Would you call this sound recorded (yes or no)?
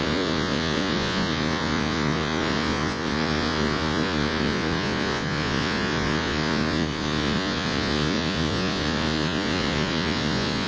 no